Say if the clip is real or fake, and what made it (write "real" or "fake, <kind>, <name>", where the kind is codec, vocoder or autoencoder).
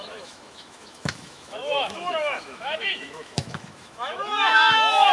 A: fake, autoencoder, DAC-VAE